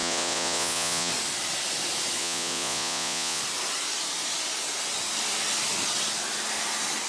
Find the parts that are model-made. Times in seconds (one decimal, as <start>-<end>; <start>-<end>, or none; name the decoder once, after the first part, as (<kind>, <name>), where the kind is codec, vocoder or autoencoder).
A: 0.0-1.1 (vocoder, Vocos); 2.2-3.4